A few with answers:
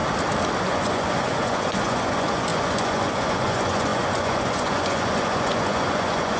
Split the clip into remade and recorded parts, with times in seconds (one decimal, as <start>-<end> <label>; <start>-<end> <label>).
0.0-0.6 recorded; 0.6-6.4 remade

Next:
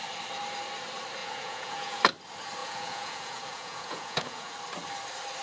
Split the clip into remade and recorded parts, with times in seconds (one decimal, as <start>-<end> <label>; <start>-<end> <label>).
0.0-1.2 recorded; 1.2-2.0 remade; 2.0-2.6 recorded; 2.6-4.5 remade; 4.5-5.4 recorded

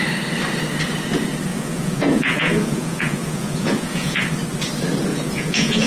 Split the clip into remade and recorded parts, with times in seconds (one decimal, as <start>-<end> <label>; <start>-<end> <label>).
0.0-1.5 recorded; 1.5-4.2 remade; 4.2-5.1 recorded; 5.1-5.9 remade

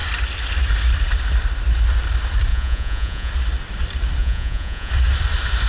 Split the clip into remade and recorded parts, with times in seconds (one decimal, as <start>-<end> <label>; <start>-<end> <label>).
0.0-2.5 recorded; 2.5-3.3 remade; 3.3-4.2 recorded; 4.2-4.9 remade; 4.9-5.7 recorded

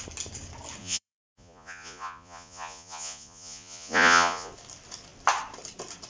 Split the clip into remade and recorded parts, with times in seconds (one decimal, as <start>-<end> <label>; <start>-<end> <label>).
0.0-0.8 recorded; 0.8-4.5 remade; 4.5-6.1 recorded

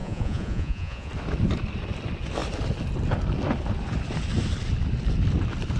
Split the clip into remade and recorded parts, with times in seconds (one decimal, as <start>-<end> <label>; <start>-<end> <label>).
0.0-1.1 remade; 1.1-5.8 recorded